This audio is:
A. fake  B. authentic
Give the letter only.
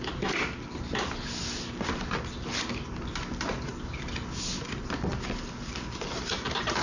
B